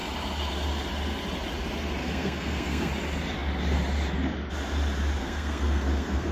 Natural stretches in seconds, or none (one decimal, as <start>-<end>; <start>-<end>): 0.0-2.0; 2.9-5.2